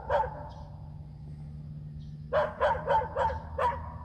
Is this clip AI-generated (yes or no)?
no